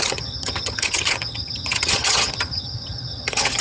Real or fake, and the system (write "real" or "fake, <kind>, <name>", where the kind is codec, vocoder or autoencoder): fake, vocoder, HiFi-GAN